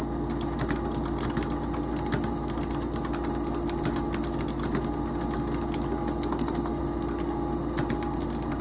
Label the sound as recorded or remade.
recorded